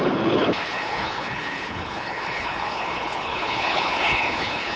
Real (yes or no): no